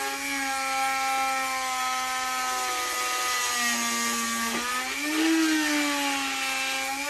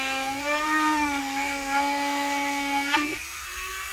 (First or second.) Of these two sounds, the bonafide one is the first